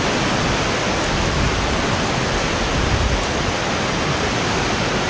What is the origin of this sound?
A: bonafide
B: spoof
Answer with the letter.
A